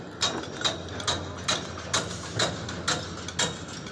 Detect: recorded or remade recorded